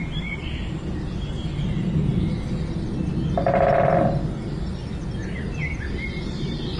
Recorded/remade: recorded